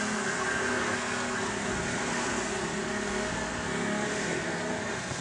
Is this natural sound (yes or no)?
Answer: no